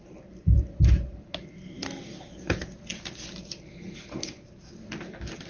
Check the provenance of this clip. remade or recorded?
recorded